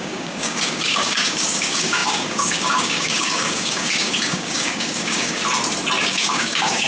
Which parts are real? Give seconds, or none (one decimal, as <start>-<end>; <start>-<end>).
5.4-6.0